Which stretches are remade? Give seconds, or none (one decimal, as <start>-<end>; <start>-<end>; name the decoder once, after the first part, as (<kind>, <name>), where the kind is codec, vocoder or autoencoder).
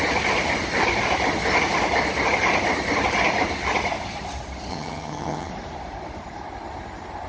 4.7-5.5 (vocoder, HiFi-GAN)